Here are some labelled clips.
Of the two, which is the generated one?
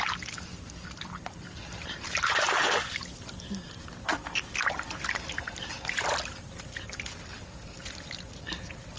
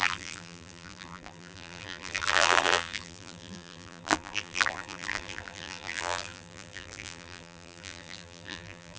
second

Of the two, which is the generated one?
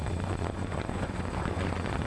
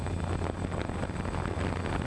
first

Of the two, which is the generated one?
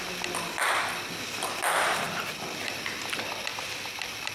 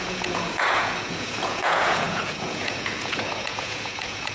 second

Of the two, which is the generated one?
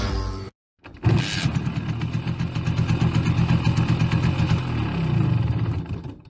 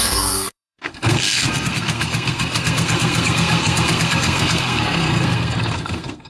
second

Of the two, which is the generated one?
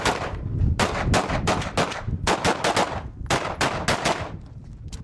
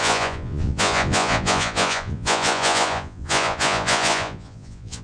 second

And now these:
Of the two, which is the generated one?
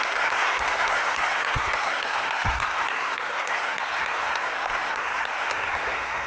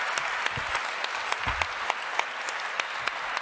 first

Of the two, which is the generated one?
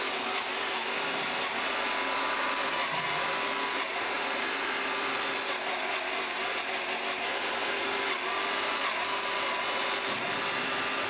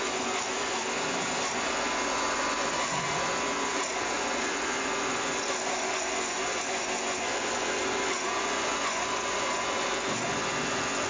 second